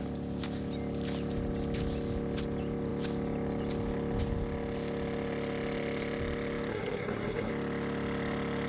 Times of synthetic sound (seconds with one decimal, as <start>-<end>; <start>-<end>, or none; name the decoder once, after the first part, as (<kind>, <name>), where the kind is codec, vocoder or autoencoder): 6.7-7.5 (codec, SNAC)